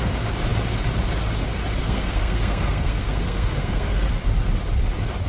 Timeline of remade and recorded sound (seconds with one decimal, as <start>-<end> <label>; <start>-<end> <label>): 0.0-1.8 recorded; 1.8-4.1 remade; 4.1-5.3 recorded